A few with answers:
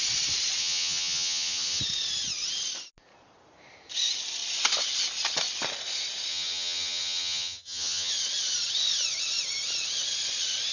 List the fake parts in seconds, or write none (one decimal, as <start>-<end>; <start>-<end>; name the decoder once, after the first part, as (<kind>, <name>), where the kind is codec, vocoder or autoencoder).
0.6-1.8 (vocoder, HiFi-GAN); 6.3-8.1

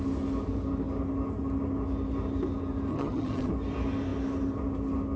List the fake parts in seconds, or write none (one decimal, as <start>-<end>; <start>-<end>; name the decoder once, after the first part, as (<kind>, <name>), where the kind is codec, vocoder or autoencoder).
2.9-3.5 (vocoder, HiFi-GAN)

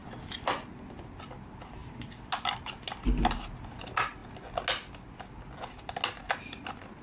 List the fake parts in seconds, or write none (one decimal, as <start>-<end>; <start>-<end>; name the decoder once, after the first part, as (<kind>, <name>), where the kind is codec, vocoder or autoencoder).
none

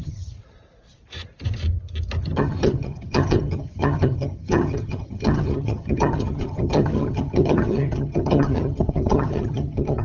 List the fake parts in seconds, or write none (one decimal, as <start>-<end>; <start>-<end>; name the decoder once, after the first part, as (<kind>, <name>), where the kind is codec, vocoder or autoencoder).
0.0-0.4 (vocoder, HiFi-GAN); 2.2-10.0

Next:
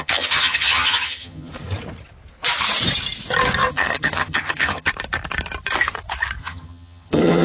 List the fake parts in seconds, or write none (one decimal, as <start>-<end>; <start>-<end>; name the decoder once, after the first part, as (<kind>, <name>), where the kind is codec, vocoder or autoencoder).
0.0-1.5 (vocoder, HiFi-GAN); 3.7-4.9; 6.4-7.4

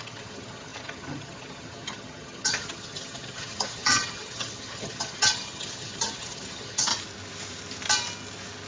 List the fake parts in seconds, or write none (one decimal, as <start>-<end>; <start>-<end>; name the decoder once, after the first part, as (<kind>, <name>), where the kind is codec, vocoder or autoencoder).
0.0-6.9 (vocoder, HiFi-GAN)

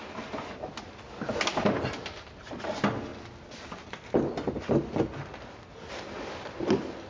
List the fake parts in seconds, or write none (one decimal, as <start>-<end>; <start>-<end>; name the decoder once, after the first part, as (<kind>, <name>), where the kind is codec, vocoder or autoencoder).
none

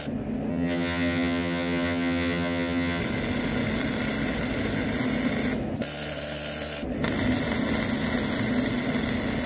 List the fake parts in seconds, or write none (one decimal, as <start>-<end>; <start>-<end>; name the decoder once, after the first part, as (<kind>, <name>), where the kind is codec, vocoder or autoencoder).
0.5-3.0 (vocoder, HiFi-GAN)